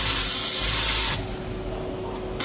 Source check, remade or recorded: recorded